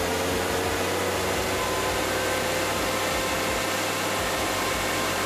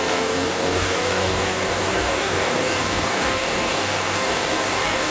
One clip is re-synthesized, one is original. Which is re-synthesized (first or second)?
second